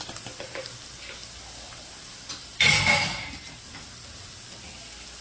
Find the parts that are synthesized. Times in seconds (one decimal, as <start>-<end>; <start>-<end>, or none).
none